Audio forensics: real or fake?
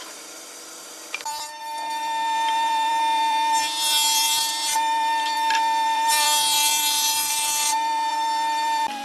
fake